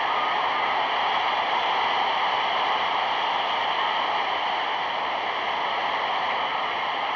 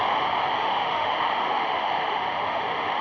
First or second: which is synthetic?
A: second